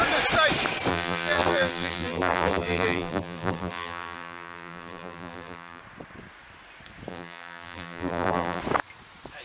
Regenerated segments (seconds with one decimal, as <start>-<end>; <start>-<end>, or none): 0.9-5.8; 7.1-8.6